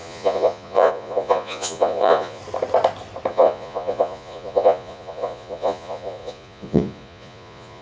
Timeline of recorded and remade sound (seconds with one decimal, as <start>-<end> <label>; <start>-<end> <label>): 0.0-2.4 remade; 2.4-3.3 recorded; 3.3-7.8 remade